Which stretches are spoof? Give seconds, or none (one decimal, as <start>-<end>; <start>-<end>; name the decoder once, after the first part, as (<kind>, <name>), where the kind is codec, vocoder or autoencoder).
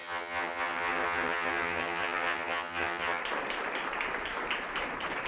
0.0-3.2 (vocoder, HiFi-GAN)